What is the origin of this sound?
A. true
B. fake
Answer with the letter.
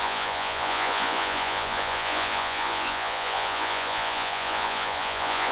B